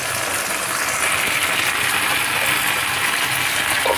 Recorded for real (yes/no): yes